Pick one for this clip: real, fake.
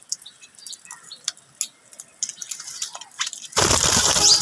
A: real